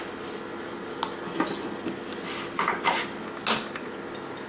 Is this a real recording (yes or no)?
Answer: yes